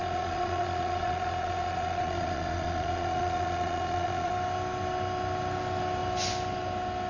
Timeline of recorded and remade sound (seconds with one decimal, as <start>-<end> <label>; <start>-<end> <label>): 0.0-4.3 remade; 4.3-7.1 recorded